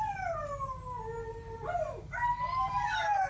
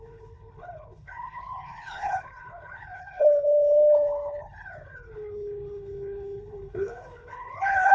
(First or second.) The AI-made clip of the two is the second